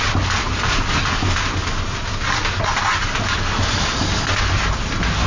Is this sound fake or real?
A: real